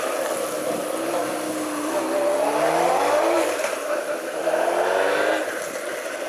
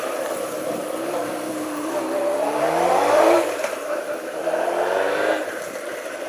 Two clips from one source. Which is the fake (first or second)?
second